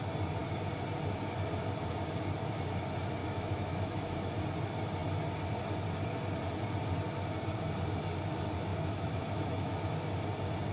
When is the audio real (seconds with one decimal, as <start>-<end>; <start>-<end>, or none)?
0.0-3.2; 4.4-8.7; 9.8-10.7